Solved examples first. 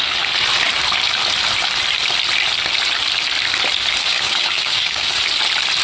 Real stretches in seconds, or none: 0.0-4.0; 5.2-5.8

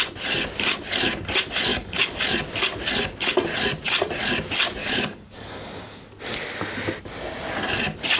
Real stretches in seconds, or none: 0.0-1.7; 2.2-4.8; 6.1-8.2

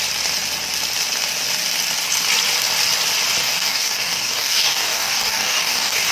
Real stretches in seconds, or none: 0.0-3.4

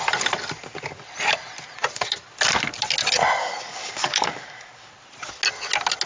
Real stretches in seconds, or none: 0.0-3.4; 4.9-6.1

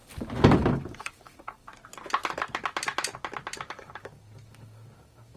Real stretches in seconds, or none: 1.7-3.7

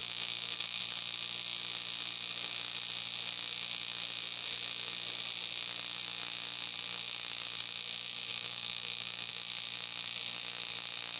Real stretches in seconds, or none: 0.8-8.3; 9.3-11.2

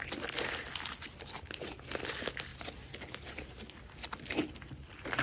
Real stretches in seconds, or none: 0.0-5.2

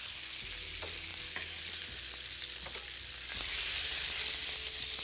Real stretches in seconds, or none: 0.0-1.1; 1.6-5.0